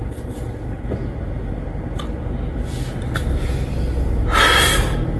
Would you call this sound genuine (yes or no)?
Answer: yes